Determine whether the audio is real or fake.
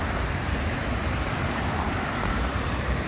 fake